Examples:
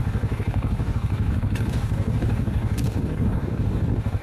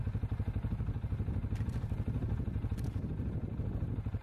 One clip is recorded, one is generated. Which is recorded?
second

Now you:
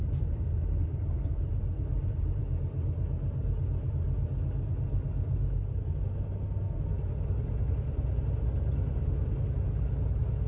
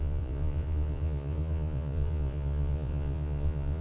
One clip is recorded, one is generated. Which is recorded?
first